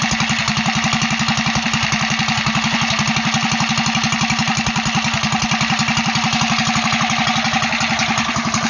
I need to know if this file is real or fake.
real